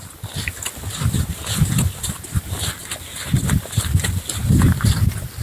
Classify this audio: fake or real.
real